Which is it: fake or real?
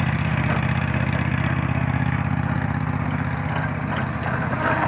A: real